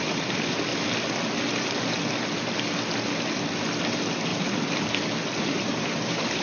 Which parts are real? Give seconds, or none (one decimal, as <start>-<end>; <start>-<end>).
0.7-3.8; 4.3-5.4